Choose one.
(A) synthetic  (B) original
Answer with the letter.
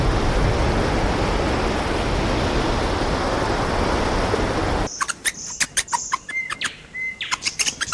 B